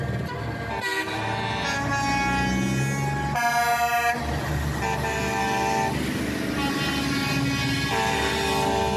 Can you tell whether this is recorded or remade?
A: recorded